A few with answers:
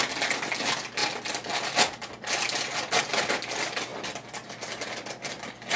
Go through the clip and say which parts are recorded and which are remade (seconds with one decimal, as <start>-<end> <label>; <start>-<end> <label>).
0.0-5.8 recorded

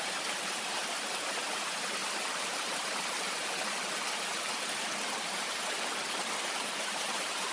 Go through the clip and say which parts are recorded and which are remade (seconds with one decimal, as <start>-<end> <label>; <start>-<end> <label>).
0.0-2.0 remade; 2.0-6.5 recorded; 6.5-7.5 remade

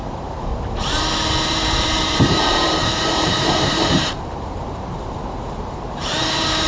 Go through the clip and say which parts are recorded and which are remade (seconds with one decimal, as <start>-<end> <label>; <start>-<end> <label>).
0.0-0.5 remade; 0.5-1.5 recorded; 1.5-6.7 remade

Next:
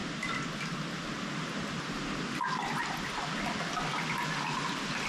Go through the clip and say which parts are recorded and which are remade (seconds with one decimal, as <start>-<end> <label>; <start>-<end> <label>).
0.0-5.1 recorded